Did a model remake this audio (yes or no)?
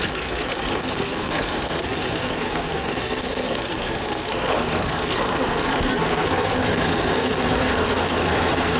yes